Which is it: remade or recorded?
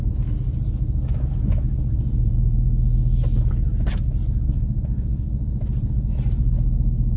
recorded